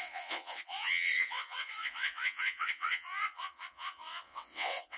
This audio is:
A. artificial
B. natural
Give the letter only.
A